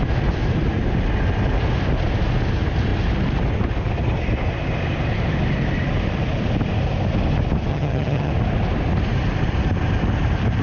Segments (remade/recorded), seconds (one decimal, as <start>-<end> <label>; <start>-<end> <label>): 0.0-7.7 recorded; 7.7-8.3 remade; 8.3-10.6 recorded